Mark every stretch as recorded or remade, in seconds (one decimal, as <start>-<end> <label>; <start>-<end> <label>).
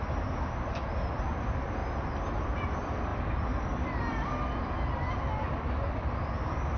0.0-6.8 recorded